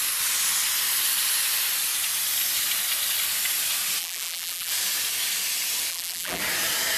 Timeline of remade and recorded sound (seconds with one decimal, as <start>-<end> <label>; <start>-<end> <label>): 0.0-4.0 recorded; 4.0-4.7 remade; 4.7-5.9 recorded; 5.9-6.4 remade; 6.4-7.0 recorded